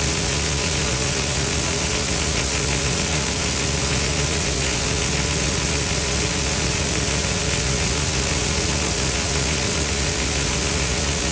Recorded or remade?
remade